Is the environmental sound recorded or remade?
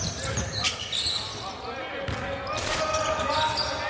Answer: recorded